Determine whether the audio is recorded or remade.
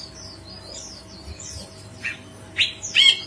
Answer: recorded